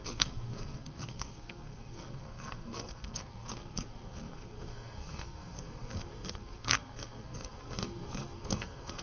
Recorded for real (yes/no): no